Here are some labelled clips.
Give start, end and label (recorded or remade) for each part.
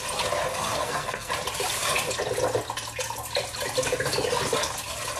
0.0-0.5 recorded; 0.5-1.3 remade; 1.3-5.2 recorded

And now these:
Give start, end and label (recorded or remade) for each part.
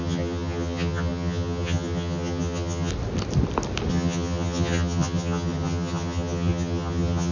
0.0-2.9 remade; 2.9-3.9 recorded; 3.9-7.3 remade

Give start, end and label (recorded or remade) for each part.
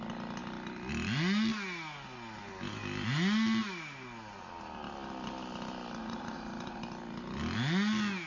0.0-6.0 recorded; 6.0-6.8 remade; 6.8-8.3 recorded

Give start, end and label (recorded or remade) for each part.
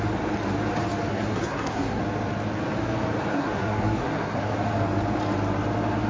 0.0-1.1 recorded; 1.1-2.0 remade; 2.0-3.3 recorded; 3.3-4.5 remade; 4.5-6.1 recorded